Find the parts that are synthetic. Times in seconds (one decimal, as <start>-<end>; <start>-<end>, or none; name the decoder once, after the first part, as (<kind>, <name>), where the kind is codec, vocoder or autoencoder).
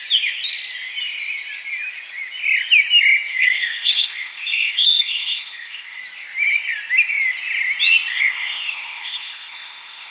3.3-6.0 (codec, ZipCodec); 8.1-10.1